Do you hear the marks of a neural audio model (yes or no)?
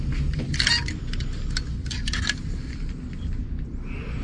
no